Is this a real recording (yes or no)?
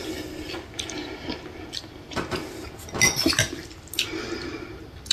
yes